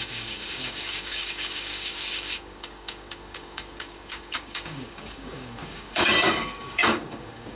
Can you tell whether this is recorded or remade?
remade